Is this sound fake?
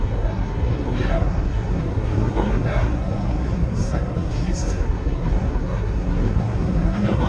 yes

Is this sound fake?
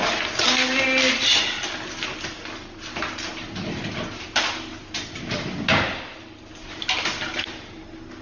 no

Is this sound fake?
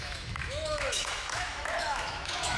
yes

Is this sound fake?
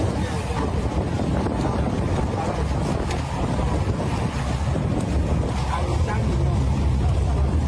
no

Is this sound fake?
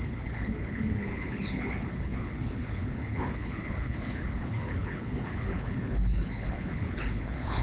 yes